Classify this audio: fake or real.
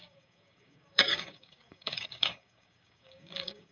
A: fake